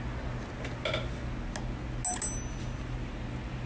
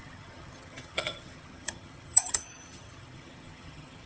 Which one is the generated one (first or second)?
second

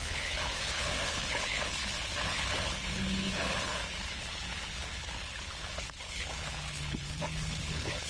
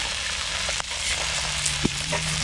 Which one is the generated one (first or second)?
first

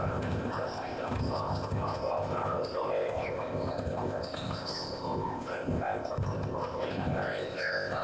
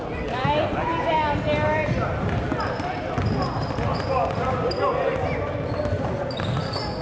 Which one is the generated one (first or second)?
first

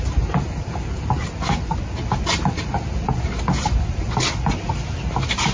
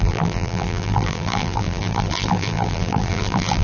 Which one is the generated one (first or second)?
second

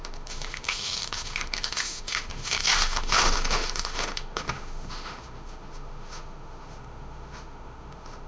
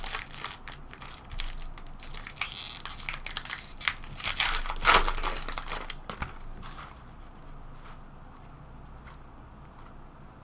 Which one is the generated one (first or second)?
first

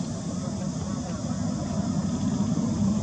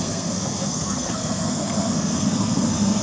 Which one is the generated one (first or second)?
second